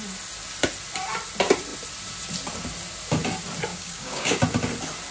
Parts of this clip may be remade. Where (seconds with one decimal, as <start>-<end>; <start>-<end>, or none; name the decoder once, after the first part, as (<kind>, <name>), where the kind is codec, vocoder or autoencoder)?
3.7-4.4 (codec, DAC)